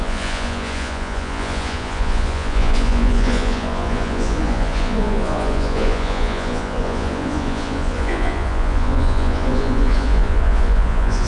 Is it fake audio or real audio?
fake